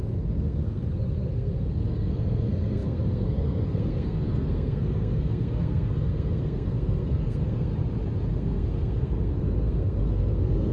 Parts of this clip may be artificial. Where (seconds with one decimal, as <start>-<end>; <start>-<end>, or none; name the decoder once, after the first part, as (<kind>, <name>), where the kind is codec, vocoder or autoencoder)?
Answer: 0.0-7.7 (codec, SNAC); 8.3-10.7